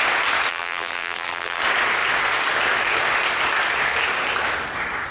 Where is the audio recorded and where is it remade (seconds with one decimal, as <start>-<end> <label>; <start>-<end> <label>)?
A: 0.0-0.5 recorded; 0.5-1.6 remade; 1.6-5.1 recorded